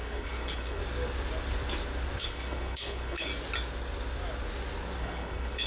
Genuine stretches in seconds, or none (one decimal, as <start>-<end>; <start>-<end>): 0.8-2.2; 3.3-5.0